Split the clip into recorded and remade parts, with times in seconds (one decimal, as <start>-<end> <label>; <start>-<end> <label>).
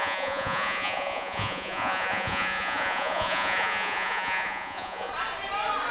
0.0-5.1 remade; 5.1-5.9 recorded